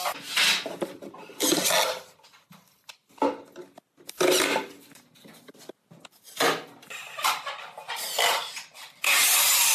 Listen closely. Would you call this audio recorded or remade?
recorded